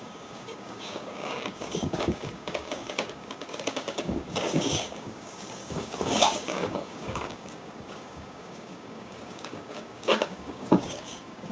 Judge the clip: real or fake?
fake